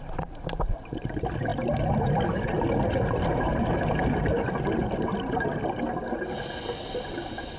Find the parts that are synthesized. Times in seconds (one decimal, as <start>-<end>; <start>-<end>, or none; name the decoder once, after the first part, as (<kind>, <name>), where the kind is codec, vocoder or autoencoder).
none